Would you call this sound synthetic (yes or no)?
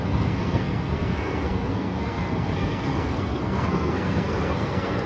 yes